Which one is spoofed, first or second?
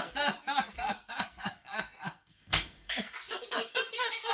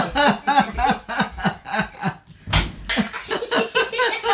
first